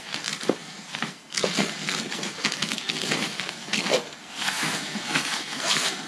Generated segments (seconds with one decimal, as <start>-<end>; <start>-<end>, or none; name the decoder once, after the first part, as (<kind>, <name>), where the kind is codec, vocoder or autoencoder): 0.0-6.1 (codec, SNAC)